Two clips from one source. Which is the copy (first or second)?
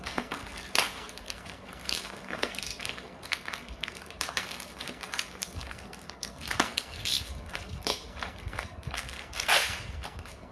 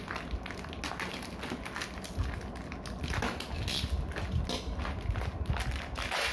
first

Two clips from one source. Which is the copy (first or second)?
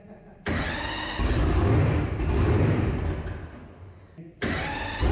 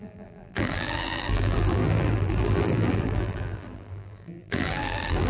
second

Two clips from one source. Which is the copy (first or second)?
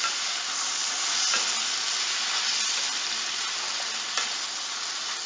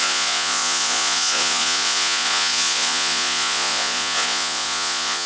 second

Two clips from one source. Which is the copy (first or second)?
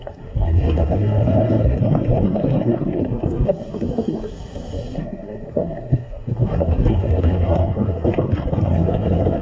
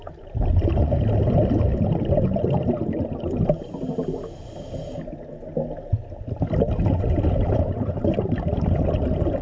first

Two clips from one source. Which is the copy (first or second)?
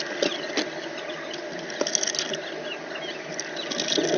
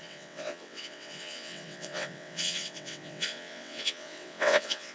second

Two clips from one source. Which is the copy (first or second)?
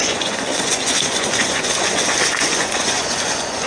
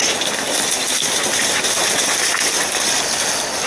first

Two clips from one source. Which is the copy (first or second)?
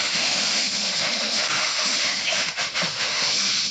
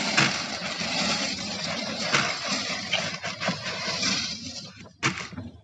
first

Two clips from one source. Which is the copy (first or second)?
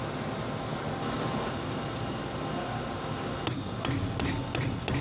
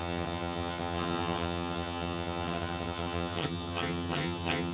second